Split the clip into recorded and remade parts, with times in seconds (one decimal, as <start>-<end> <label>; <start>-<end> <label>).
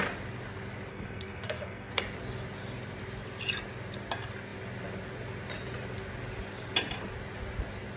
0.0-0.9 recorded; 0.9-1.9 remade; 1.9-8.0 recorded